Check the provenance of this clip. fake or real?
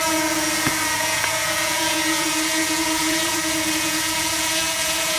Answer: fake